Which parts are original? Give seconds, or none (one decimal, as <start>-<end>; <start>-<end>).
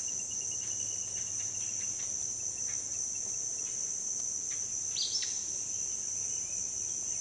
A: 0.0-7.2